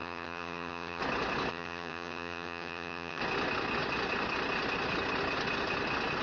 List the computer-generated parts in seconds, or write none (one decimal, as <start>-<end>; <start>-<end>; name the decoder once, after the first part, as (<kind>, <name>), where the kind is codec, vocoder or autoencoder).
0.0-1.0 (vocoder, HiFi-GAN); 1.5-3.2